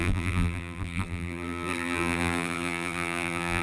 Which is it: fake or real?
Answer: fake